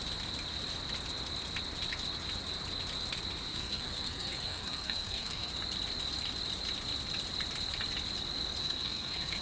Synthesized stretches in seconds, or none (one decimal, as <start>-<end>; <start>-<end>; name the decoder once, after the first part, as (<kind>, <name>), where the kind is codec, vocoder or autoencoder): 3.5-5.5 (codec, SNAC); 8.6-9.4